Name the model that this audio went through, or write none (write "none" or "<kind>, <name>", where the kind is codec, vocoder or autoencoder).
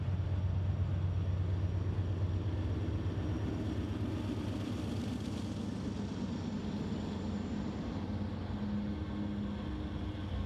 none